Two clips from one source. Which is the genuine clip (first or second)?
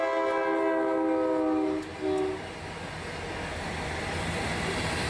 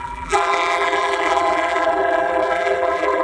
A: first